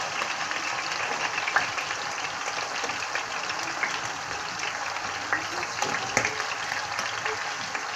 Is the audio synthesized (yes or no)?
no